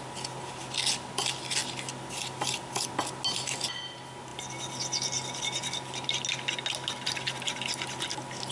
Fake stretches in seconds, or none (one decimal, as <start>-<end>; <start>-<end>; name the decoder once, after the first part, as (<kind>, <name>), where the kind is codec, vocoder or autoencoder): none